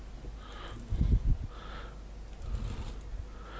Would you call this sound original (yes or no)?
yes